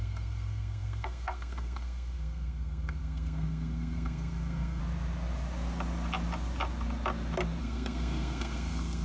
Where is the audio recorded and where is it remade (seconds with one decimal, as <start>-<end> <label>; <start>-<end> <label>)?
0.0-4.8 remade; 4.8-7.6 recorded; 7.6-9.0 remade